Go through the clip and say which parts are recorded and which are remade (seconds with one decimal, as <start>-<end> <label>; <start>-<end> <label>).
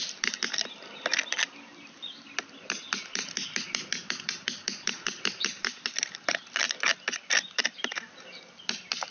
0.0-9.1 recorded